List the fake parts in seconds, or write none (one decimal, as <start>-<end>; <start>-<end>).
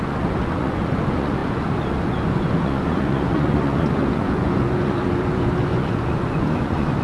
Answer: 0.0-7.0